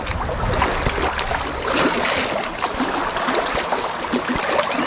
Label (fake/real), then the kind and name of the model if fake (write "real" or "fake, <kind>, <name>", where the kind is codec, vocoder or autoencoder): real